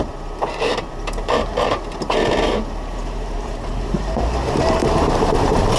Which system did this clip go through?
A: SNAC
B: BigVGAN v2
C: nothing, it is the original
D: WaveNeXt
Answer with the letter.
B